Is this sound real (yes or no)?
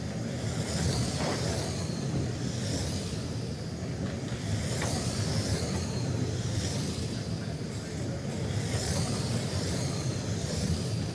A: yes